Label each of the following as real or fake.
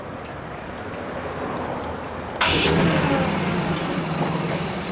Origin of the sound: real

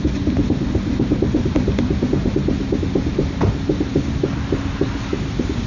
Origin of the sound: real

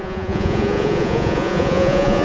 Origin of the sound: fake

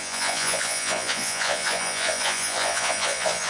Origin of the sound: fake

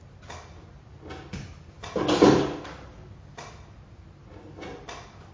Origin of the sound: real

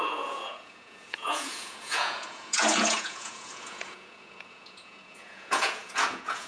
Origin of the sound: fake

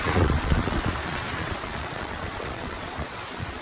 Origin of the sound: fake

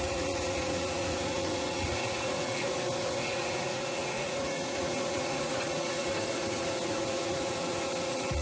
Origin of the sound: fake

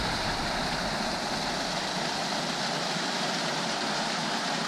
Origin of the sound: real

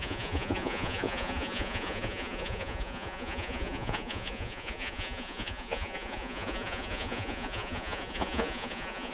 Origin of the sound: fake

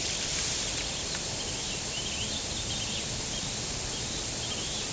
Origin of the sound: real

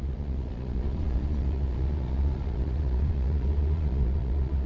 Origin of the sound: fake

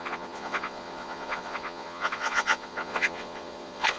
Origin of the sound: fake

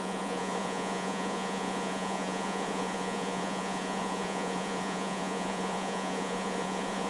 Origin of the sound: fake